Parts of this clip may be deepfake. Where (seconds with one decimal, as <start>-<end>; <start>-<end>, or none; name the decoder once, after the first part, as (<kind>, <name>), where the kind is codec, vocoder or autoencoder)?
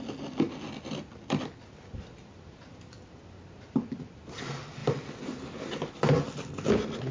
none